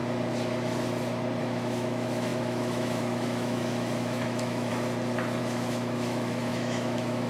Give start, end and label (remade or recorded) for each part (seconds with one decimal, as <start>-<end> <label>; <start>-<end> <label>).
0.0-1.4 recorded; 1.4-4.7 remade; 4.7-5.4 recorded; 5.4-7.3 remade